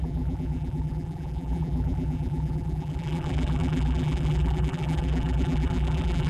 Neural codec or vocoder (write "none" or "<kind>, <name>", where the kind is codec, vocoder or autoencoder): vocoder, BigVGAN v2